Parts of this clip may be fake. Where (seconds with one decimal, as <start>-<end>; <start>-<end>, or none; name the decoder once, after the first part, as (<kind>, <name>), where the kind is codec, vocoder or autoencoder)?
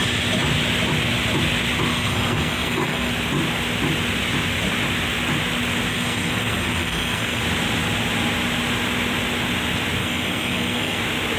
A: 1.9-3.1 (codec, SNAC); 5.9-7.4; 10.0-11.0